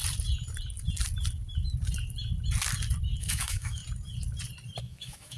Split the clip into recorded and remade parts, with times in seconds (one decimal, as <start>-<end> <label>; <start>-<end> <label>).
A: 0.0-3.2 recorded; 3.2-3.8 remade; 3.8-4.8 recorded; 4.8-5.4 remade

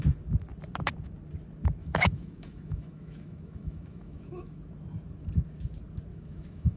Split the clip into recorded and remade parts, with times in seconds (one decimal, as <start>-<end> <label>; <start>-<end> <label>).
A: 0.0-1.8 recorded; 1.8-4.6 remade; 4.6-6.1 recorded; 6.1-6.8 remade

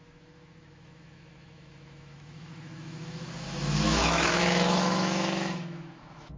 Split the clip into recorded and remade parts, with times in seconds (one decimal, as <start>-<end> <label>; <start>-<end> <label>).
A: 0.0-6.4 remade

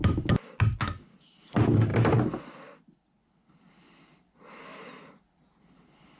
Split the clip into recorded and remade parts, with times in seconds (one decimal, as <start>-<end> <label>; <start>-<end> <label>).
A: 0.0-6.2 recorded

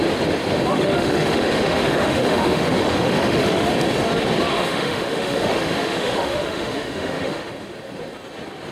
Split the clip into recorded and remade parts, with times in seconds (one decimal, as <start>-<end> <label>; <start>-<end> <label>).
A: 0.0-0.7 recorded; 0.7-3.7 remade; 3.7-4.5 recorded; 4.5-7.5 remade; 7.5-8.7 recorded

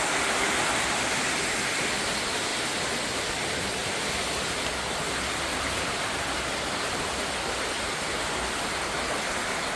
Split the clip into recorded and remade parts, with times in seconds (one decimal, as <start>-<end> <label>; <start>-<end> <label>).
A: 0.0-9.8 recorded